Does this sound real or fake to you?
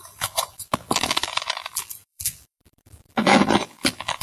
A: fake